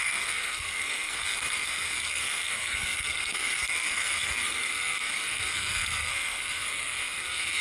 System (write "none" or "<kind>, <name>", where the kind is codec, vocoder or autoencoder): codec, SNAC